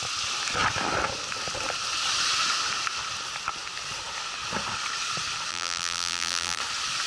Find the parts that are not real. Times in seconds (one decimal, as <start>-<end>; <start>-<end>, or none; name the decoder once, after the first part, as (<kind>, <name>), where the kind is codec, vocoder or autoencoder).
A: 5.5-6.6 (vocoder, BigVGAN v2)